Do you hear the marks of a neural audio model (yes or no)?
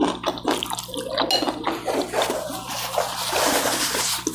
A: no